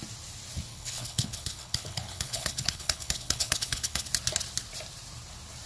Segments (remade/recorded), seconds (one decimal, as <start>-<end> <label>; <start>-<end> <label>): 0.0-0.7 recorded; 0.7-4.1 remade; 4.1-5.7 recorded